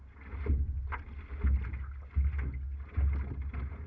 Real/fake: real